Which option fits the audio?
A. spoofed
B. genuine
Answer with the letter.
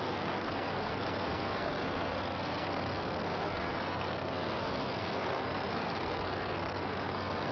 A